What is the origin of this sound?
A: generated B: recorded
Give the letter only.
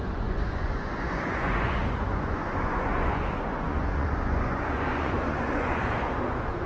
A